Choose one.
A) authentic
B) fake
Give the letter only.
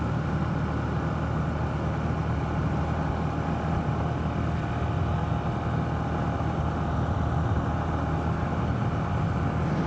A